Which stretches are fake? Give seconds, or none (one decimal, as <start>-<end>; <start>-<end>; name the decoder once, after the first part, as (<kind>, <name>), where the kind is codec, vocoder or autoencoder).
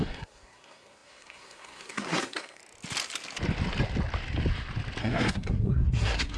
0.0-2.6 (codec, SNAC); 5.0-6.4